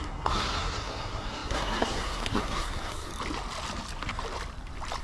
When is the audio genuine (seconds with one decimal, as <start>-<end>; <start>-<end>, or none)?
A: 3.1-5.0